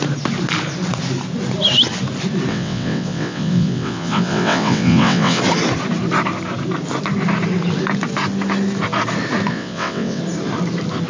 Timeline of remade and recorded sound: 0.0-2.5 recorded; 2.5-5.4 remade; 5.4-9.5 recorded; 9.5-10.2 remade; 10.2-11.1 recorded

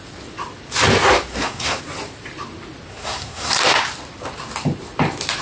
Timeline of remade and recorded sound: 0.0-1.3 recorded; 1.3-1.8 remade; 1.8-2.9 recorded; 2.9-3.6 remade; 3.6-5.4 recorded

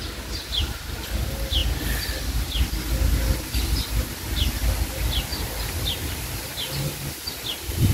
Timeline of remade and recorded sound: 0.0-7.9 recorded

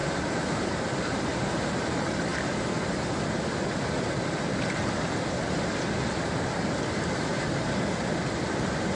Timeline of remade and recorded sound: 0.0-0.8 remade; 0.8-8.9 recorded

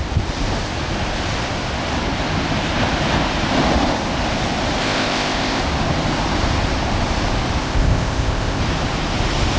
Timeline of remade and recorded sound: 0.0-4.8 recorded; 4.8-5.6 remade; 5.6-7.6 recorded; 7.6-8.6 remade; 8.6-9.6 recorded